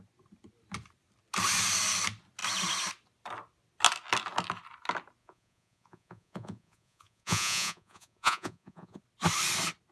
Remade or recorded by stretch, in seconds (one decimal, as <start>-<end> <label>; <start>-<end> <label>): 0.0-5.2 recorded; 5.2-9.0 remade; 9.0-9.9 recorded